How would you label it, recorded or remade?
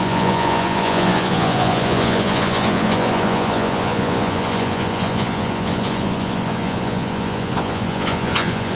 remade